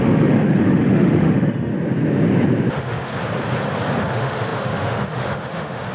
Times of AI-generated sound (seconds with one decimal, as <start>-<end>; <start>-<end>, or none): 0.0-1.7; 2.7-3.1; 4.1-5.9

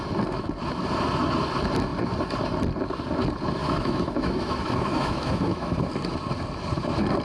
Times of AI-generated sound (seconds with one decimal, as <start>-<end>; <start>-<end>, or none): 3.6-5.9

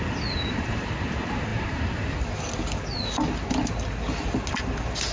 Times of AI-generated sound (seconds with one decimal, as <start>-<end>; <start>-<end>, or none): none

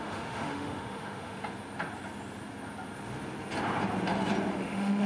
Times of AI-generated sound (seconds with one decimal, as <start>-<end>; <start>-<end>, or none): 0.0-1.4; 4.5-5.1

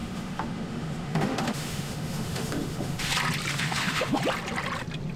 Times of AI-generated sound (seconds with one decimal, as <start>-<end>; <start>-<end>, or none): 0.0-3.1; 3.5-4.2

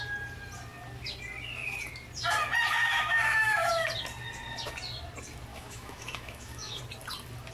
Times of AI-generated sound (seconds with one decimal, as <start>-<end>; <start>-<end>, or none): 2.8-3.7; 5.5-6.8

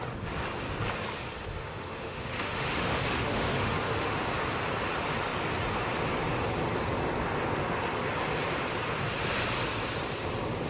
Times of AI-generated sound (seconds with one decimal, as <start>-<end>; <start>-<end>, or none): 1.5-4.3